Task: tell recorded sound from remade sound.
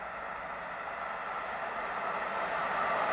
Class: recorded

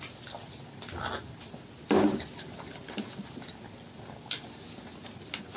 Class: recorded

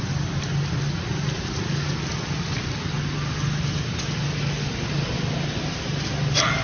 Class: recorded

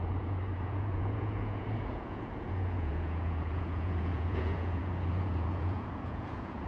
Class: remade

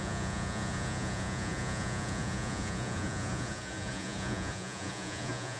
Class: remade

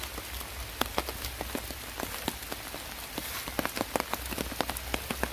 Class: recorded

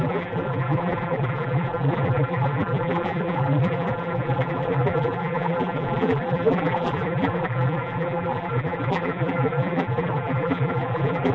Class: remade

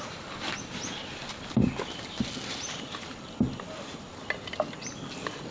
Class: recorded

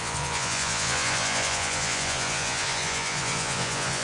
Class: remade